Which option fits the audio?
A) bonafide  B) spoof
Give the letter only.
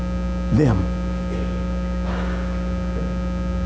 A